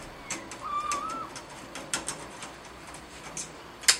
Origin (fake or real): real